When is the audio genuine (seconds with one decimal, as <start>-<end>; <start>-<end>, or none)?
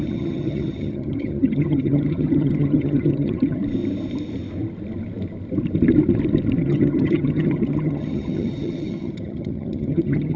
3.6-6.6